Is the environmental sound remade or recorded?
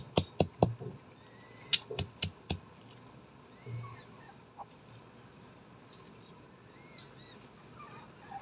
recorded